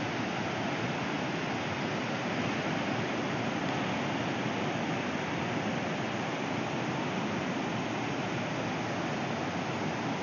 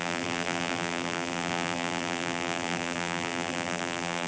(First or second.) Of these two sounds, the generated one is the second